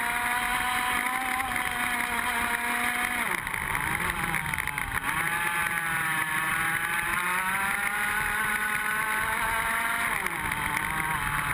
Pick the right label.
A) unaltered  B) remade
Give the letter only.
A